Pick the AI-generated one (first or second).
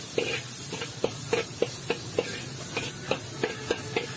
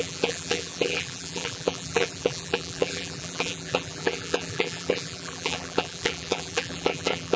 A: second